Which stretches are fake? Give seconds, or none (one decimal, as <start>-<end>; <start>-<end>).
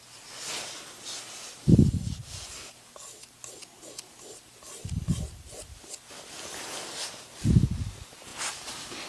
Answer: none